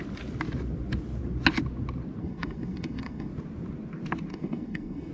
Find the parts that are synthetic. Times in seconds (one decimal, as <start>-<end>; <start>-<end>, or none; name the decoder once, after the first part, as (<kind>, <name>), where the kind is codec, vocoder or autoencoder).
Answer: 2.2-3.3 (codec, SNAC); 4.3-5.1